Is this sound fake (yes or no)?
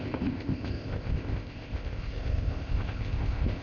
yes